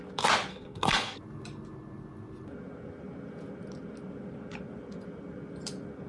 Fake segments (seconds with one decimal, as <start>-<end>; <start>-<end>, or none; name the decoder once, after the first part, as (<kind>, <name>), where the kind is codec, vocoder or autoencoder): 0.5-1.2 (codec, SNAC)